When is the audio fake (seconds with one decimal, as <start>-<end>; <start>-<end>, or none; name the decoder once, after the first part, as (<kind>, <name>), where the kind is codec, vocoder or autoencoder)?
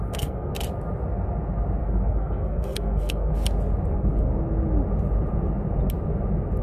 0.0-0.5 (codec, SNAC); 1.8-3.3; 3.9-4.3